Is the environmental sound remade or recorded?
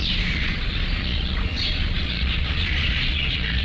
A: remade